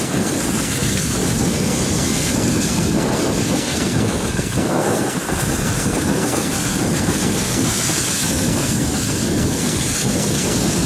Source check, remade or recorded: remade